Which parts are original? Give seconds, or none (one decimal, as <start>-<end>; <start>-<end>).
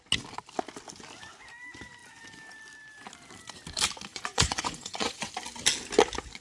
0.0-4.1; 5.3-6.4